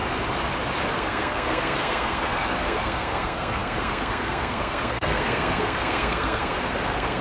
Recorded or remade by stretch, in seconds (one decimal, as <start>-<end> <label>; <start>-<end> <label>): 0.0-0.9 recorded; 0.9-7.2 remade